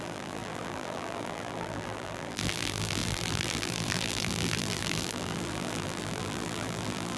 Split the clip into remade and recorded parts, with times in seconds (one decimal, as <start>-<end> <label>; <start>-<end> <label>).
0.0-7.2 remade